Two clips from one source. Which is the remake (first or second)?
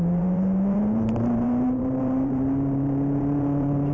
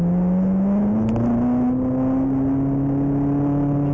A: first